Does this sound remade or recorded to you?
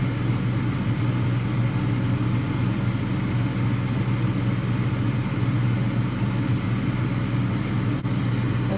recorded